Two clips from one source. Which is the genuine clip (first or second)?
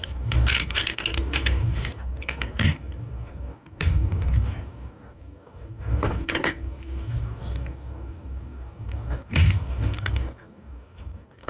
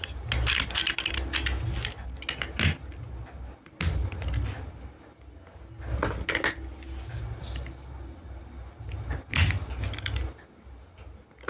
second